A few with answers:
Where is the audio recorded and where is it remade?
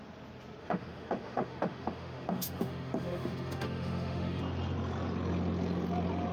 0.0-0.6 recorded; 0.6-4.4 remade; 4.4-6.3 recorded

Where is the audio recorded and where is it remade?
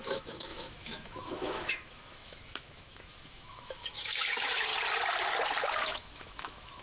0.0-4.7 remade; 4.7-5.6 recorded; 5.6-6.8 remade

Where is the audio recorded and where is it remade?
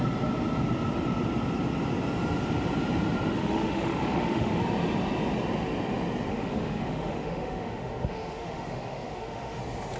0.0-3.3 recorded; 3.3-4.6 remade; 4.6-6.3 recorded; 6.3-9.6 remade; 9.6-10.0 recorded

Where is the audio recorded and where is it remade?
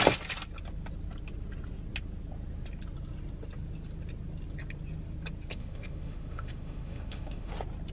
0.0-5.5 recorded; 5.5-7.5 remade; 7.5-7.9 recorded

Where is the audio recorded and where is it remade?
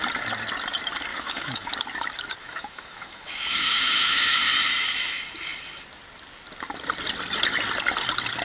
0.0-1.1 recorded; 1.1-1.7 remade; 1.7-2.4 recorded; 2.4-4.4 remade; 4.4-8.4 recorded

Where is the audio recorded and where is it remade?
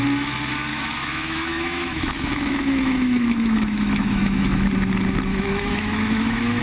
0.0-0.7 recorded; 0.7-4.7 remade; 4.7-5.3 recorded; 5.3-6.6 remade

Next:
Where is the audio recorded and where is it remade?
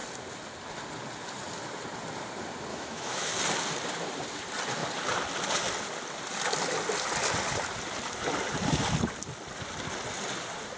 0.0-2.7 recorded; 2.7-3.3 remade; 3.3-10.8 recorded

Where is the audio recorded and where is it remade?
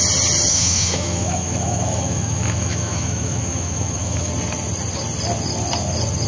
0.0-0.5 recorded; 0.5-4.3 remade; 4.3-6.3 recorded